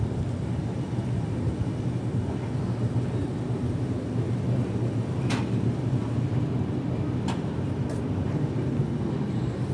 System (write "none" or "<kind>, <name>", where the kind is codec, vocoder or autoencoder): none